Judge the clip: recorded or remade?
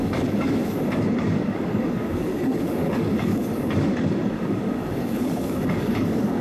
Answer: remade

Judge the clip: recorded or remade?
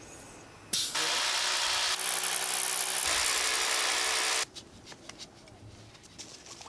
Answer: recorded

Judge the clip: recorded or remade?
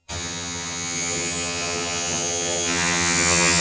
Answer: remade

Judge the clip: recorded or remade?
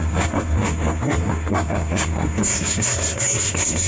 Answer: remade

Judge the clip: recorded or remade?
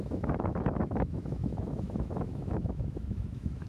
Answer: remade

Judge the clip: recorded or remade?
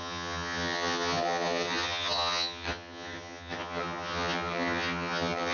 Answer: remade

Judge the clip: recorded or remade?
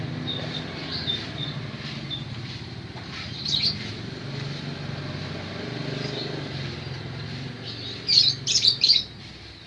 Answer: remade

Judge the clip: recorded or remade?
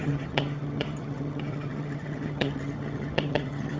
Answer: remade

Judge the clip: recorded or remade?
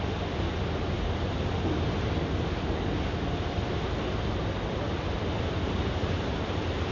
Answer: recorded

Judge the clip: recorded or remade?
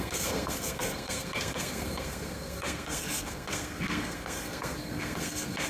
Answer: remade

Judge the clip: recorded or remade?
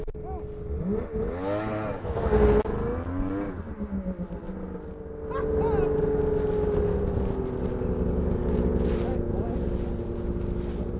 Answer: recorded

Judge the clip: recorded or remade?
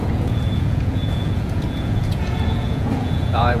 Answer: remade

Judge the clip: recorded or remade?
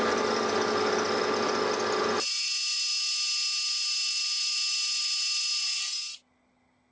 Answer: recorded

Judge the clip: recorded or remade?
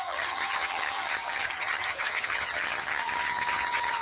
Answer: remade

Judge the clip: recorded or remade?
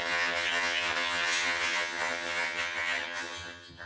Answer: remade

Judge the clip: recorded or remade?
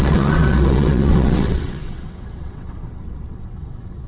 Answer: remade